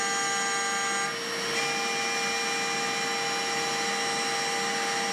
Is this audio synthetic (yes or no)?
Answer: no